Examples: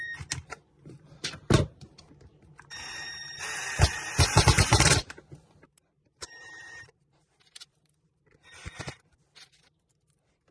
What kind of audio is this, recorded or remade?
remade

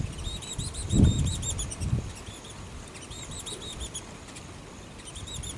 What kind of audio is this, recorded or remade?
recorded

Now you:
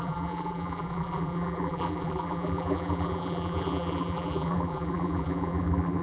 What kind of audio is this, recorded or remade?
remade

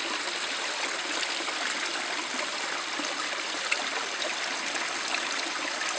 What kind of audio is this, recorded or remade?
recorded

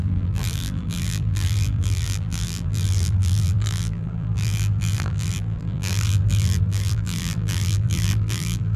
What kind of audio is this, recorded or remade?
remade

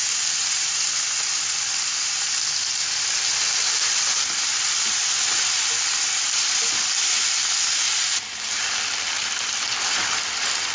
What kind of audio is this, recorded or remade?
remade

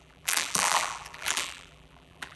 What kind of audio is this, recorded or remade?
remade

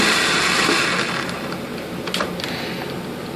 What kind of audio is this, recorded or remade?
recorded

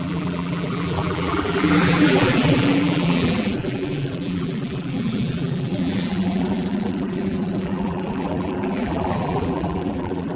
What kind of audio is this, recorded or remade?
remade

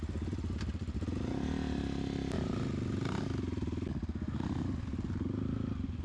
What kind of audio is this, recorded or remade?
recorded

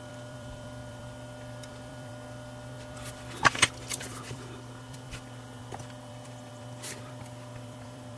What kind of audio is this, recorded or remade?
remade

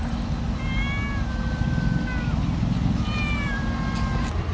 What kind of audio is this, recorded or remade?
recorded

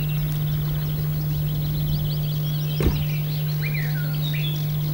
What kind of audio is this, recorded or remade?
recorded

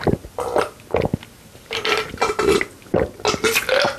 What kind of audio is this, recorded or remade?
recorded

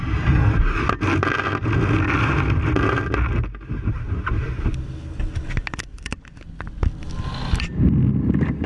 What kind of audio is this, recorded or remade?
recorded